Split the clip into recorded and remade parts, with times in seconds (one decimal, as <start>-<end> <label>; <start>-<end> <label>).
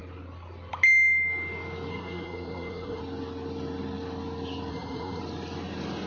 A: 0.0-1.9 recorded; 1.9-3.0 remade; 3.0-4.7 recorded; 4.7-5.2 remade; 5.2-6.1 recorded